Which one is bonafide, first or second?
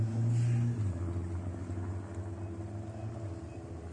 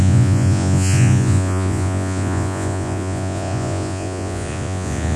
first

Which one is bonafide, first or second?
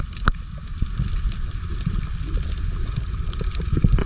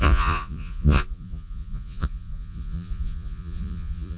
first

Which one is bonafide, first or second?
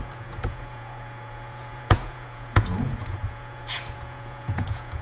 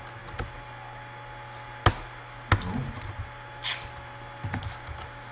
second